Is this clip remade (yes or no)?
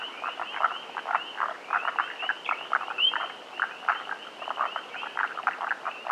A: no